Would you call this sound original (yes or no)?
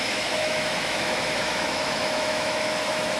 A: no